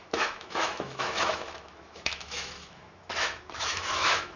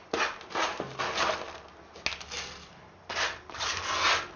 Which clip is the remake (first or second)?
first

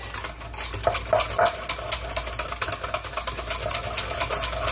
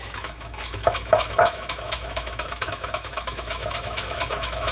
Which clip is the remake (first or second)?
second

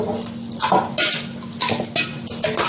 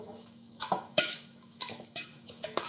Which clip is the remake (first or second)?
second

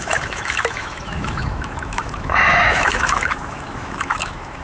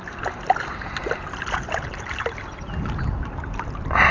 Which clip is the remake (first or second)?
first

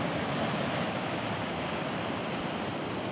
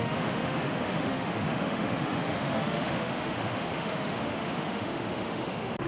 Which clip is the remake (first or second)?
second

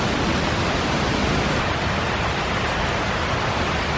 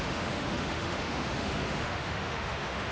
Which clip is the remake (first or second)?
second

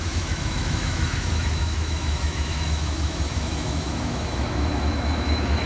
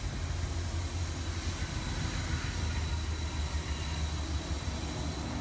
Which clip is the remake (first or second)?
first